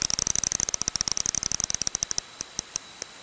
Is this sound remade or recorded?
recorded